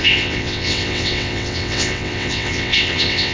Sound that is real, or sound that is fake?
fake